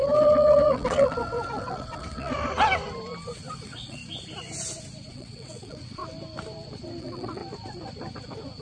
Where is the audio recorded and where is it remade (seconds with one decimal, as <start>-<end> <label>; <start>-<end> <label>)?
0.0-2.3 remade; 2.3-3.3 recorded; 3.3-4.0 remade; 4.0-5.1 recorded; 5.1-6.0 remade; 6.0-7.0 recorded; 7.0-7.4 remade; 7.4-8.6 recorded